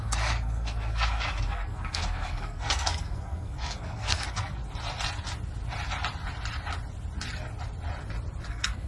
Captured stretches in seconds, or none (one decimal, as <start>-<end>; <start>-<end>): 4.6-8.5